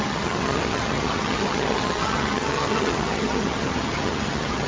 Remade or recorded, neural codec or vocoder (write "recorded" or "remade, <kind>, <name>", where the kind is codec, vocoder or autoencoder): remade, vocoder, HiFi-GAN